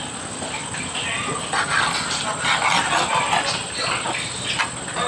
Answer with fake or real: real